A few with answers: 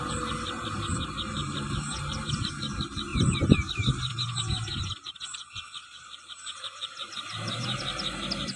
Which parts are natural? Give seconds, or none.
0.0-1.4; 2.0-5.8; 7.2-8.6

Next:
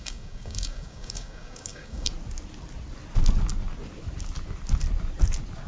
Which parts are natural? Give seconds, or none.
2.1-5.7

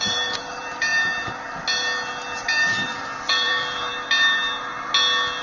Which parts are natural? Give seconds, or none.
0.9-2.7; 3.9-5.4